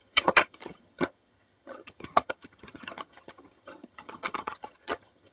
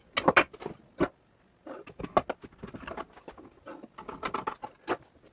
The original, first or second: second